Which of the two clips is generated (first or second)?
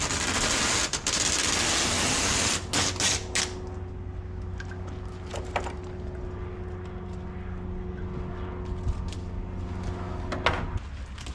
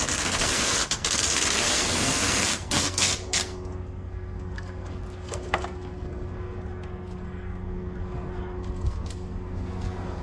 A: second